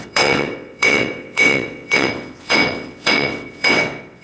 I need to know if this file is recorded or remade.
remade